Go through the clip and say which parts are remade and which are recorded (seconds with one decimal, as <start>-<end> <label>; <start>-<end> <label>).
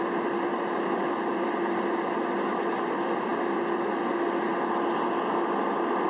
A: 0.0-6.1 recorded